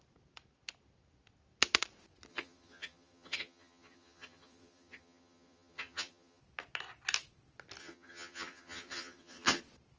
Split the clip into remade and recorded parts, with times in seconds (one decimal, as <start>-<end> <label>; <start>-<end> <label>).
0.0-2.3 recorded; 2.3-6.4 remade; 6.4-7.8 recorded; 7.8-9.6 remade; 9.6-10.0 recorded